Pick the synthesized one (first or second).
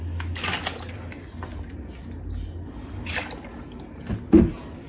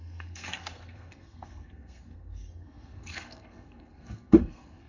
second